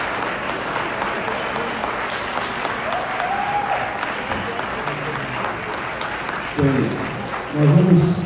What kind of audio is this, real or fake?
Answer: real